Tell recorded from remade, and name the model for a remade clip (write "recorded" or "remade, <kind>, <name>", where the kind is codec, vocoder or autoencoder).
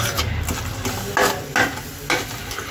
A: recorded